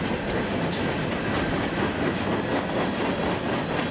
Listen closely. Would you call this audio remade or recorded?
recorded